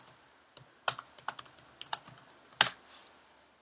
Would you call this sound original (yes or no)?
yes